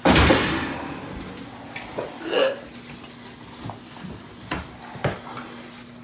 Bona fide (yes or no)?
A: yes